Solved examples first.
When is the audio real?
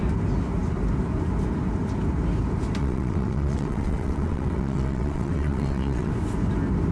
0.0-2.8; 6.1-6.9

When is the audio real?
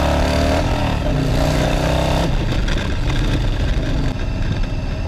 0.0-5.1